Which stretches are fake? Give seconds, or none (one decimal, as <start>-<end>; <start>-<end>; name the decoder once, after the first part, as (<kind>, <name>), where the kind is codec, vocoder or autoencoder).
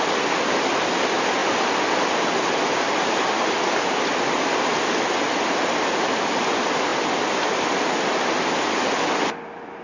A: none